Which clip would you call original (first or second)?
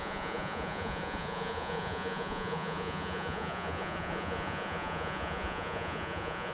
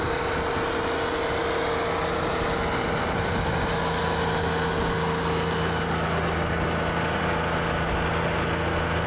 second